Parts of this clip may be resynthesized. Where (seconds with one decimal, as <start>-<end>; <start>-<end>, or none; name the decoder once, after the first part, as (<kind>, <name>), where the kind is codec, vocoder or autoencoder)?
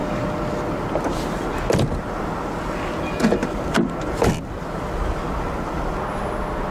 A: none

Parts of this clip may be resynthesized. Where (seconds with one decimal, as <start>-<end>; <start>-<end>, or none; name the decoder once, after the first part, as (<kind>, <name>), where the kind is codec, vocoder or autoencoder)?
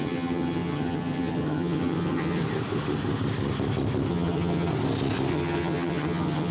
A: 0.0-2.4 (vocoder, HiFi-GAN); 4.1-4.7; 5.3-6.5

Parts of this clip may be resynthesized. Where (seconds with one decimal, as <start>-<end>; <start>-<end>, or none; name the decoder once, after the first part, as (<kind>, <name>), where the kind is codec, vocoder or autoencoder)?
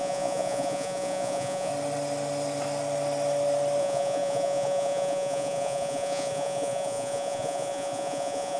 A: 0.0-1.7 (vocoder, Vocos); 3.8-8.6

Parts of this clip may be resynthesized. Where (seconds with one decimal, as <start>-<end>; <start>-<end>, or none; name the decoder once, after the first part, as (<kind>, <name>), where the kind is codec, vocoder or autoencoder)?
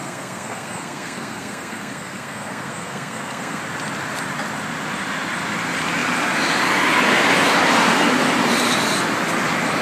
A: 0.0-3.6 (codec, SNAC)